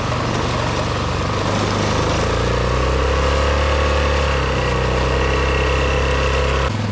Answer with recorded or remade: recorded